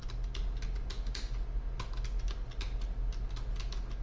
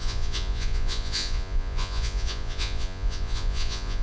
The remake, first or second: second